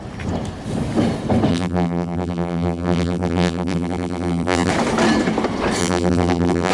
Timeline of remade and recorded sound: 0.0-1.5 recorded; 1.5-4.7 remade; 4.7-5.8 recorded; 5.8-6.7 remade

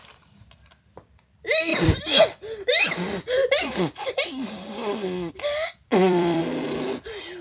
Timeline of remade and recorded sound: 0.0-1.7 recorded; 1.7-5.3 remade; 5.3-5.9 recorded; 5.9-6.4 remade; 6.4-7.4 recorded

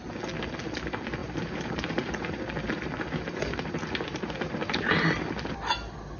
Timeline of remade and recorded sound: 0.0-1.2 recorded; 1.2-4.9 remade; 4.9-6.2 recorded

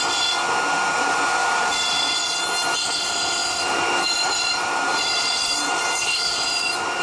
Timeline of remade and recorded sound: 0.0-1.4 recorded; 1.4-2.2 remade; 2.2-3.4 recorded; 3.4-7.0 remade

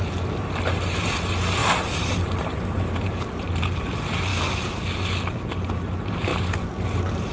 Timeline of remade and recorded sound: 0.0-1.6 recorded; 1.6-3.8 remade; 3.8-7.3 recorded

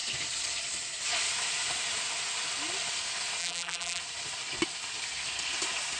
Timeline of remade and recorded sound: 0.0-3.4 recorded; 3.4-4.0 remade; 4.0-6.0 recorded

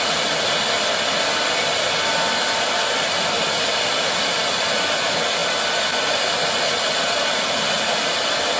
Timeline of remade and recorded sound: 0.0-8.6 recorded

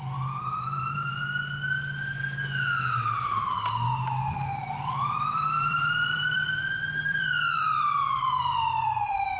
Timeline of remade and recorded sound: 0.0-1.2 remade; 1.2-4.6 recorded; 4.6-9.4 remade